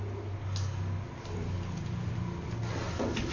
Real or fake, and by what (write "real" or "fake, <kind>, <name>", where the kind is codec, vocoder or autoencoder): real